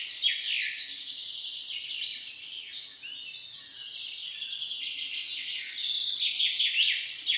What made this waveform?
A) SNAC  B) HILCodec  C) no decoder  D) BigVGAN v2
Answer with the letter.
C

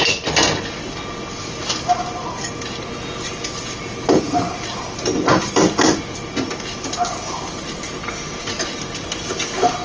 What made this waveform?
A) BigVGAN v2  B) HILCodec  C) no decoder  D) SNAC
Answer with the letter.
C